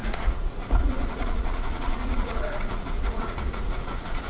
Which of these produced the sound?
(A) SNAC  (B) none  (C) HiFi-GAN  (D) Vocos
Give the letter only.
D